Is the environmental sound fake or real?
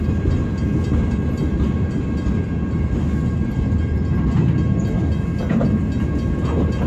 real